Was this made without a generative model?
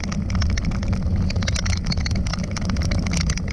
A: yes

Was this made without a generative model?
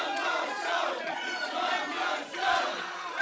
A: no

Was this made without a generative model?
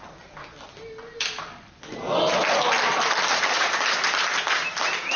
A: yes